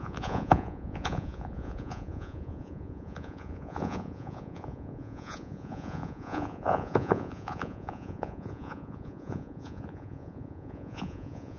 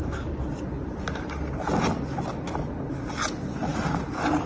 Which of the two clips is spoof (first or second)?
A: first